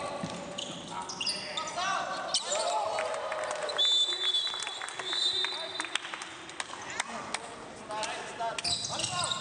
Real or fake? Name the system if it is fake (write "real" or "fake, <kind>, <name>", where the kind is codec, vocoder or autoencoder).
real